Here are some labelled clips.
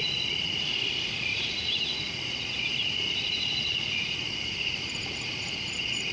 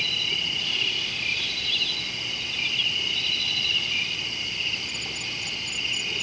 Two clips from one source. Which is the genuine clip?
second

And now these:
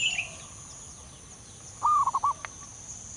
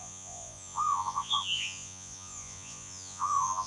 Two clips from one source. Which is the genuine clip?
first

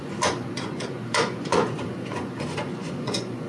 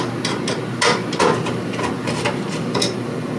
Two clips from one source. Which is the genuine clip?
second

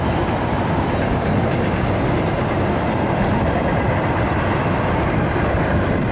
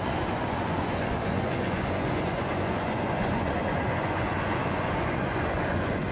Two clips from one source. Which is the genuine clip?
first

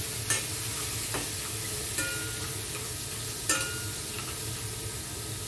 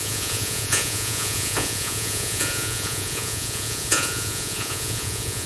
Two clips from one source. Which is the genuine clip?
first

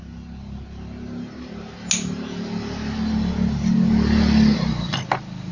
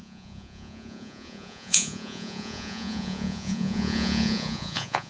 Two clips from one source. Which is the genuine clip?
first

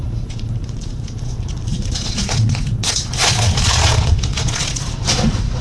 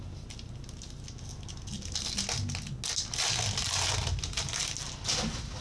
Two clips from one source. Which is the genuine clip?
second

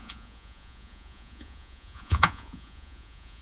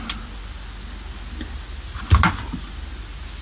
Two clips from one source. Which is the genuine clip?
second